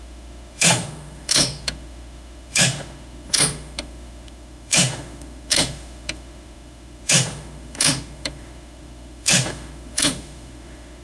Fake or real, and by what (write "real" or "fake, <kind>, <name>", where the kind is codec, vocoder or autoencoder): fake, autoencoder, DAC-VAE